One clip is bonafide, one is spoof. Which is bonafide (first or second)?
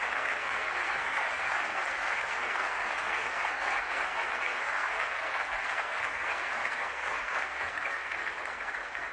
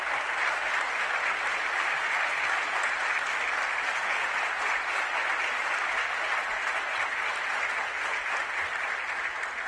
second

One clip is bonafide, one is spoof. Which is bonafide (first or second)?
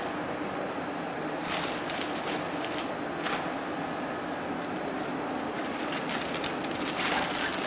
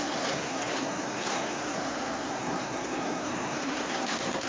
first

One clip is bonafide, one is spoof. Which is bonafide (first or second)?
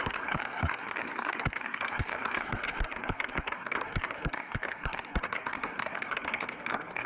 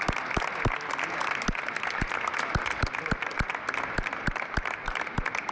second